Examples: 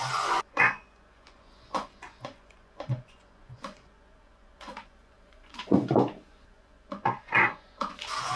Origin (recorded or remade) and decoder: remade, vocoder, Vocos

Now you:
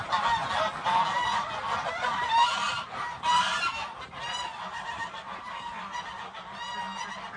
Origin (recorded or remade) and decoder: recorded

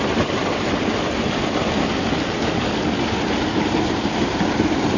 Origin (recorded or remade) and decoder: recorded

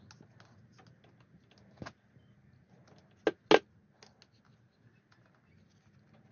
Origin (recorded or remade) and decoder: recorded